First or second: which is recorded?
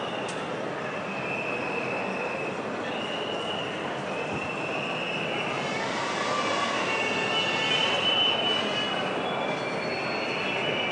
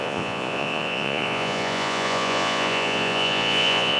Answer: first